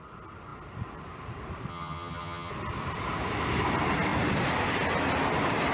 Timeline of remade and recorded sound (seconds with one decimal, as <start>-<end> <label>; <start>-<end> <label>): 0.0-1.7 recorded; 1.7-2.5 remade; 2.5-5.7 recorded